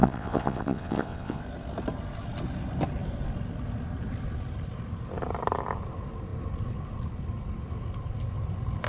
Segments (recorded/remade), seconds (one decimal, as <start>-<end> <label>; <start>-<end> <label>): 0.0-1.4 remade; 1.4-8.9 recorded